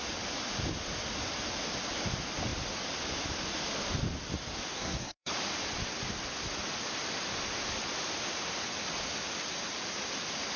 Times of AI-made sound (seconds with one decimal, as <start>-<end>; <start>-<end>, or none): 4.7-5.3

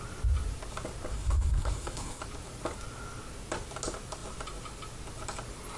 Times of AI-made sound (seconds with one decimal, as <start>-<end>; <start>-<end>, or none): 1.1-2.2

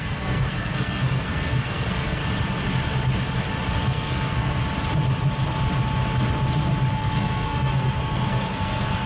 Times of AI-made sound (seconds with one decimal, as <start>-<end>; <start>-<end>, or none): 0.0-2.2; 3.8-4.6; 6.9-9.1

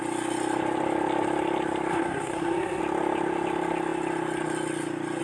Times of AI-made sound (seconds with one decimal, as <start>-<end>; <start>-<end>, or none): 1.9-2.8